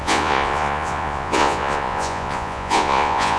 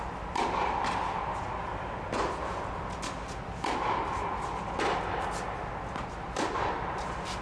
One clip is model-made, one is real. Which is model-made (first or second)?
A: first